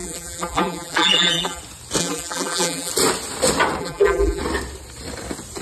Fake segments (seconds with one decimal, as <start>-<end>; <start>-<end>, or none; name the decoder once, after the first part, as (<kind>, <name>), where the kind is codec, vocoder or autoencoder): 0.0-1.6 (vocoder, BigVGAN v2); 2.0-2.9; 3.8-4.4